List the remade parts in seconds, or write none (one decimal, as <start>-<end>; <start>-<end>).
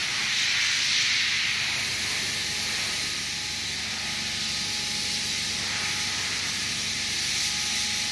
none